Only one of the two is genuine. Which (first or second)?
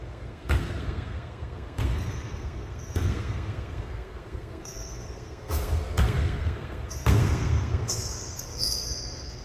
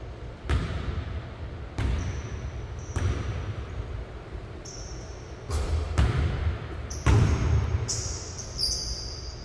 second